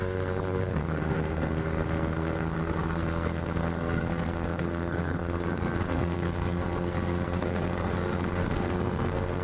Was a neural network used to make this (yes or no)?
yes